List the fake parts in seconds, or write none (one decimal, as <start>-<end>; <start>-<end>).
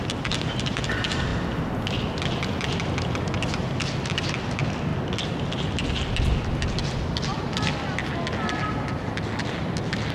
none